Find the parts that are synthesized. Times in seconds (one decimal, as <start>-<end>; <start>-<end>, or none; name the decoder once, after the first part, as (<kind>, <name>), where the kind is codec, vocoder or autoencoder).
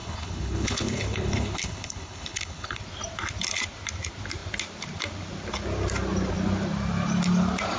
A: 0.0-2.8 (codec, HILCodec)